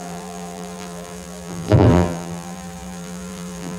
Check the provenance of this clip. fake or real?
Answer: fake